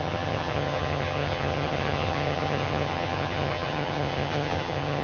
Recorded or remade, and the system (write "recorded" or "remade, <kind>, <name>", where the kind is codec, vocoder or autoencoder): remade, vocoder, HiFi-GAN